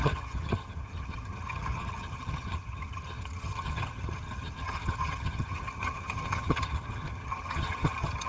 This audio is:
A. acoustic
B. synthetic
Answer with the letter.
B